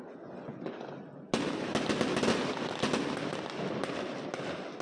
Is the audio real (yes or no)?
yes